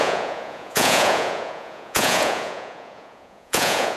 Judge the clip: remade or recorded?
remade